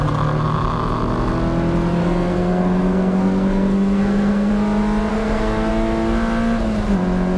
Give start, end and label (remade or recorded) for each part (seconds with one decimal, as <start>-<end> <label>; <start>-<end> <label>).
0.0-2.0 recorded; 2.0-4.5 remade; 4.5-5.1 recorded; 5.1-5.7 remade; 5.7-7.4 recorded